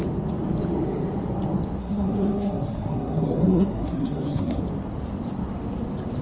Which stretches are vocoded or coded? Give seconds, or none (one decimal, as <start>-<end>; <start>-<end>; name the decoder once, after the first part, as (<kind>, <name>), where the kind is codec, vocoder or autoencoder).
1.8-4.6 (codec, SNAC)